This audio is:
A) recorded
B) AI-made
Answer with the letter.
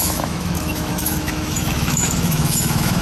B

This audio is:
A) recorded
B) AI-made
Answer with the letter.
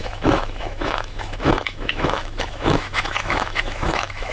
B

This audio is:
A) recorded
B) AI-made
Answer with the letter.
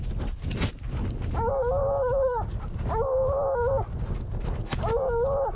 A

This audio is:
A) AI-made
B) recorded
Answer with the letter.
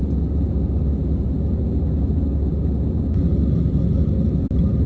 B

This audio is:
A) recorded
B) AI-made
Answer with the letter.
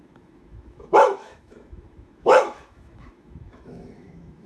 B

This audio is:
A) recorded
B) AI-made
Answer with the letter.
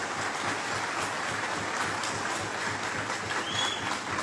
A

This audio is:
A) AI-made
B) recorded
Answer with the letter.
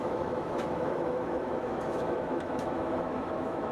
A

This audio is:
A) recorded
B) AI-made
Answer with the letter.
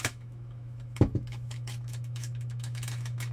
B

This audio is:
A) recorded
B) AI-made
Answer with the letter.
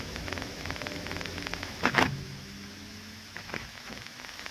B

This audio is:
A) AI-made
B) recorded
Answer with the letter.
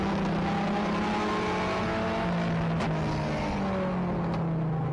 B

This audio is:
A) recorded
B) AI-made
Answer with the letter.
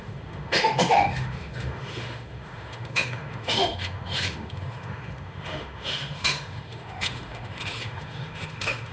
B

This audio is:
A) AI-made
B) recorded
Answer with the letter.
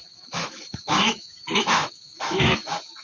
A